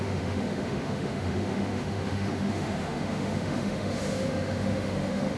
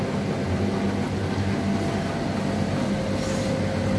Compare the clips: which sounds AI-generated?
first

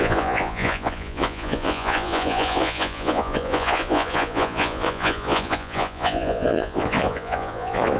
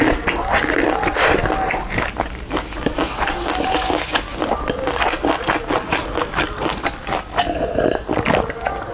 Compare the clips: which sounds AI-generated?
first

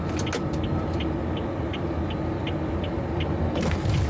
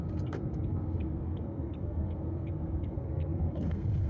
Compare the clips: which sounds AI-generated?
second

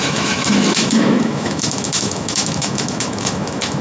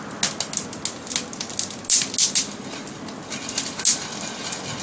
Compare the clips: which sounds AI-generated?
first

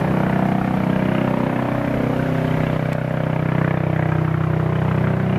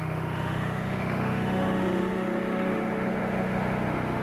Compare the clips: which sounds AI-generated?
second